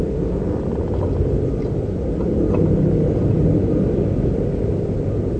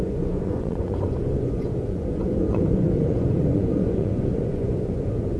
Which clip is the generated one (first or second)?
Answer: second